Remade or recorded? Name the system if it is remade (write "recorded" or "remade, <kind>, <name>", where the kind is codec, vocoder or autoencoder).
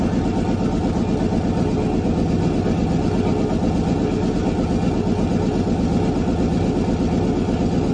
recorded